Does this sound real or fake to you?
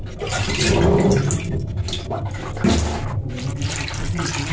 real